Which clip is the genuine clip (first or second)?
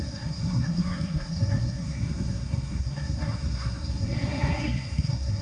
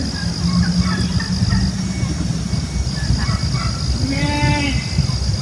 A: second